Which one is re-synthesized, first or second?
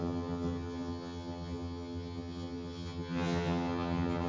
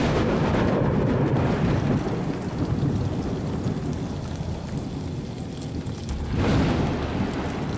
first